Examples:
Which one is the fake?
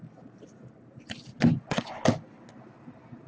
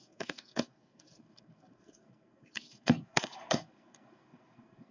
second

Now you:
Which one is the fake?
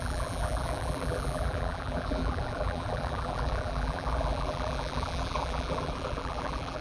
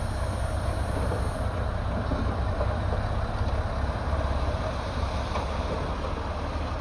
first